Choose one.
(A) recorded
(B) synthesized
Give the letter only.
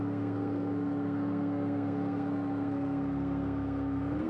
B